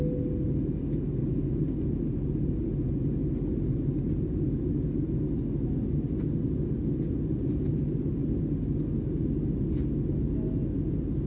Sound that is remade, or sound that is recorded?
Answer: recorded